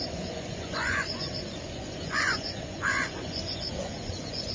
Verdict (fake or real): fake